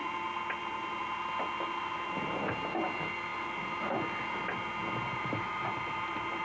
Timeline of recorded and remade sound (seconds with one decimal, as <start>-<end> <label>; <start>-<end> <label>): 0.0-6.4 recorded